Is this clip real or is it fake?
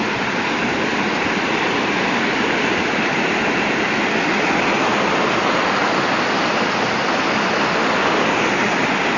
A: real